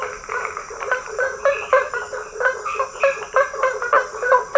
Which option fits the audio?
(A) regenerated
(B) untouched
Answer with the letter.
A